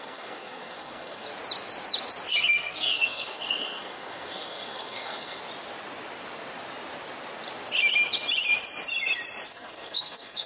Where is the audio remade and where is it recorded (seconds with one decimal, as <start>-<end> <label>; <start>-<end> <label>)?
0.0-1.3 remade; 1.3-2.3 recorded; 2.3-5.4 remade; 5.4-9.5 recorded; 9.5-10.5 remade